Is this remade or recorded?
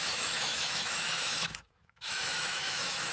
remade